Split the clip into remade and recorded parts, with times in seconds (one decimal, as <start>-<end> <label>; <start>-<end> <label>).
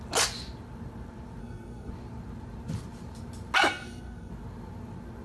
0.0-1.4 recorded; 1.4-1.9 remade; 1.9-3.7 recorded; 3.7-4.3 remade; 4.3-5.2 recorded